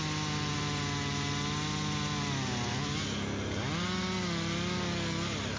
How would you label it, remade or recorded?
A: recorded